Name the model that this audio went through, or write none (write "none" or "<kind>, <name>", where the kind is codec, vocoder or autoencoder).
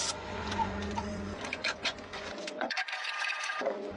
vocoder, Vocos